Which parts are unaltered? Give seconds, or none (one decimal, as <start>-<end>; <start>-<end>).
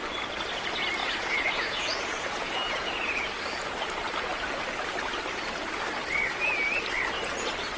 0.0-1.0; 3.2-7.8